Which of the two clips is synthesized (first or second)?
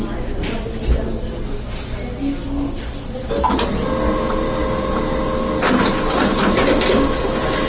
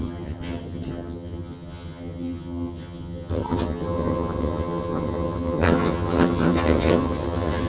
second